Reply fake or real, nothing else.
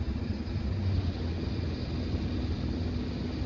real